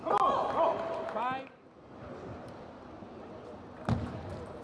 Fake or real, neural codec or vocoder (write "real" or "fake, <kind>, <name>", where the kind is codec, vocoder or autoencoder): real